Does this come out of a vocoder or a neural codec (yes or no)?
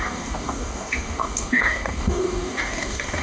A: yes